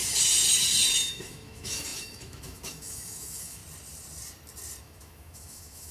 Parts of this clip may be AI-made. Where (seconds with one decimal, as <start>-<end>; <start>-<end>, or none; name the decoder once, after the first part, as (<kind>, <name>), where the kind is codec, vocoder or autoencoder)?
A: 1.1-3.6 (autoencoder, DAC-VAE); 4.8-5.9